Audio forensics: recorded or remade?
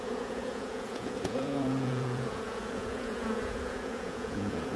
remade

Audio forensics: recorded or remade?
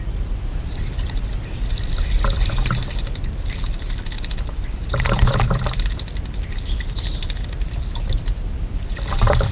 remade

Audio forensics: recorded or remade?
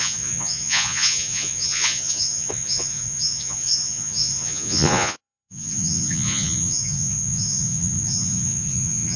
remade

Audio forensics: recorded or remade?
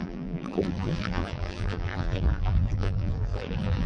remade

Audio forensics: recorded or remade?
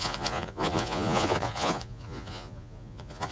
remade